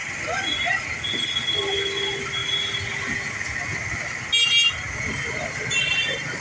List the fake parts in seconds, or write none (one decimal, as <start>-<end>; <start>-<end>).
none